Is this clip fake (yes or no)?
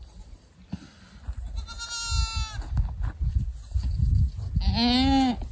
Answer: no